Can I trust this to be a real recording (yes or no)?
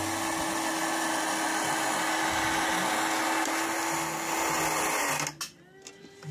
yes